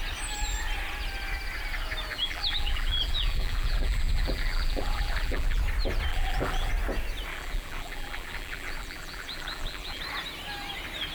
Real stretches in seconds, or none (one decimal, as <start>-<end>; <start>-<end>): 0.0-2.1; 5.6-6.1; 6.7-7.3; 10.0-11.1